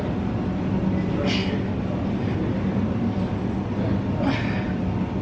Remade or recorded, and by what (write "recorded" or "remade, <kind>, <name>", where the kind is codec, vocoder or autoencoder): recorded